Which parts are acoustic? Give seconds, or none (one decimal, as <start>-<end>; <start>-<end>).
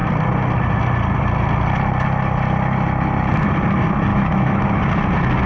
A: 0.0-4.1; 4.8-5.5